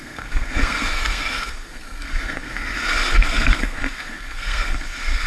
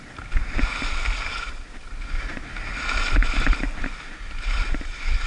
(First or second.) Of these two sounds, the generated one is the first